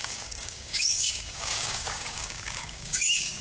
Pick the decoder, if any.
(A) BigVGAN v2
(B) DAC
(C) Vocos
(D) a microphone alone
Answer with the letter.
B